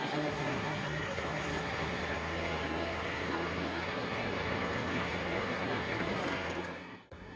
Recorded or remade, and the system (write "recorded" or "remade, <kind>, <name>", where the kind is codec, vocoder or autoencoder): remade, codec, SNAC